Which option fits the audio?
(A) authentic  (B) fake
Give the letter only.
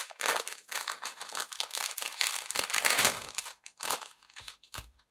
B